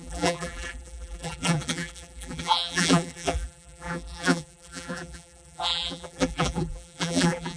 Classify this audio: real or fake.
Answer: fake